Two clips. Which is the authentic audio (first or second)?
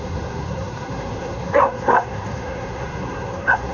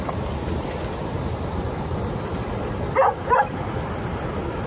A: second